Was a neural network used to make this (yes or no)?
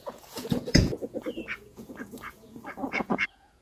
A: yes